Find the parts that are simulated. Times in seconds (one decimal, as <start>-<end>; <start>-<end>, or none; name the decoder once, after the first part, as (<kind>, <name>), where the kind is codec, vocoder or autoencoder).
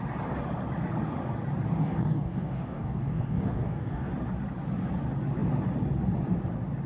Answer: 1.8-4.1 (codec, DAC)